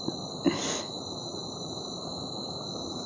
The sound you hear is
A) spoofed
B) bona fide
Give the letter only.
B